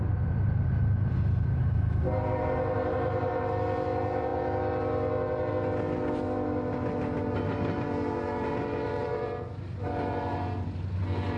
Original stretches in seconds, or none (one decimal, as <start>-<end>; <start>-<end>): 0.0-11.4